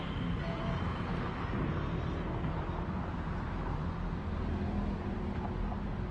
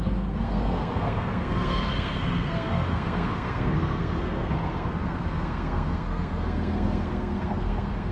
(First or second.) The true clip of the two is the first